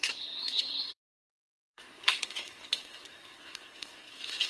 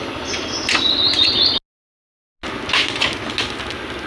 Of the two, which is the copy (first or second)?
first